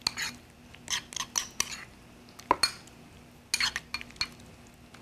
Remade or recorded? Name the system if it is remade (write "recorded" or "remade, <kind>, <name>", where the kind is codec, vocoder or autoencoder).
recorded